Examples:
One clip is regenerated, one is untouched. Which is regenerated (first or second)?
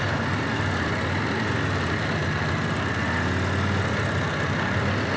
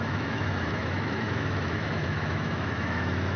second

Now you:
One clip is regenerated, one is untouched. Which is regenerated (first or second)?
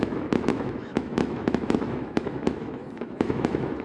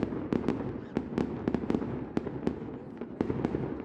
first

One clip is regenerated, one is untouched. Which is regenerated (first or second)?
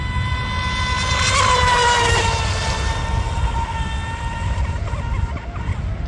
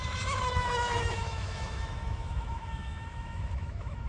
second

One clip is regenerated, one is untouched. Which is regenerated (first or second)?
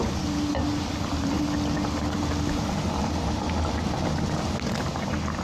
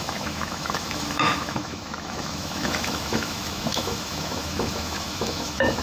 second